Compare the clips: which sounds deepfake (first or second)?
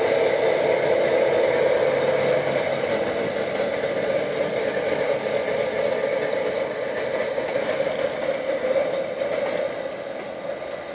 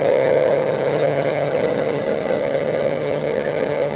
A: second